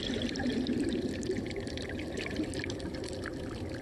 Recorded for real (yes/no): no